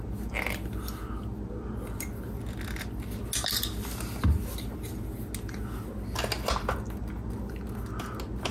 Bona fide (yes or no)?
yes